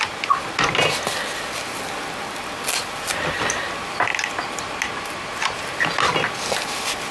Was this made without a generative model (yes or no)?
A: yes